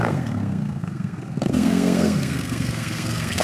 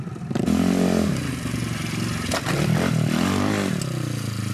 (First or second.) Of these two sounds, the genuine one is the second